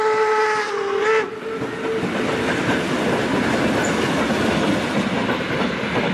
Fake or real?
real